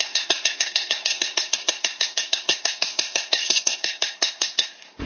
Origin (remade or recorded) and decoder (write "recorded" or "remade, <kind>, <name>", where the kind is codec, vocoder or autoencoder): remade, codec, SNAC